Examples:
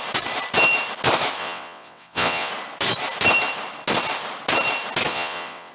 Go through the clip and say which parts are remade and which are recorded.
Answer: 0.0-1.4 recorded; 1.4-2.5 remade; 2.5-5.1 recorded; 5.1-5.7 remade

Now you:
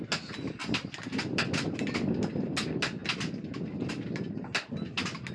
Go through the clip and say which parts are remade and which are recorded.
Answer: 0.0-0.6 recorded; 0.6-2.3 remade; 2.3-5.3 recorded

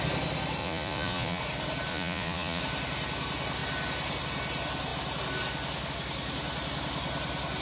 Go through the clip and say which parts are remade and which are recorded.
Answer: 0.0-0.6 recorded; 0.6-1.4 remade; 1.4-1.9 recorded; 1.9-2.6 remade; 2.6-7.6 recorded